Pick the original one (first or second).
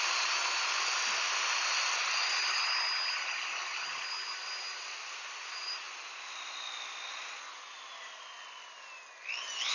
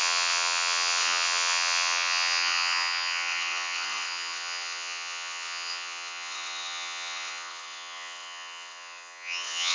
first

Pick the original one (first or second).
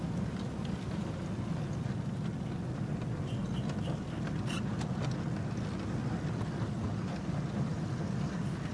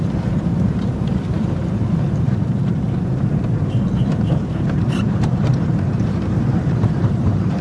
first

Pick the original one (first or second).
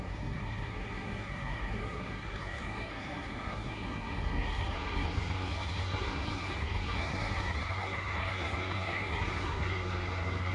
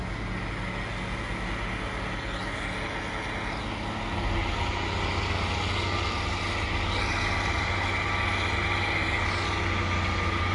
second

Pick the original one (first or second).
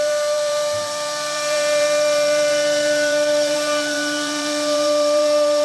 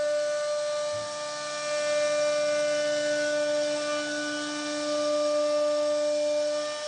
second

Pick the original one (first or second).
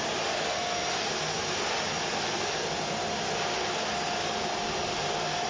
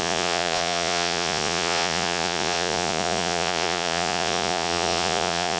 first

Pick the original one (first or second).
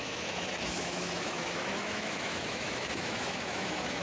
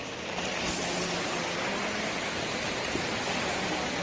second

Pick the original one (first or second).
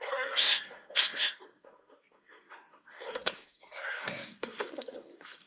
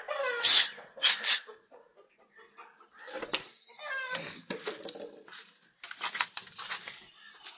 second